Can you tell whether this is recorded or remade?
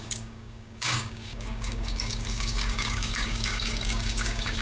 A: remade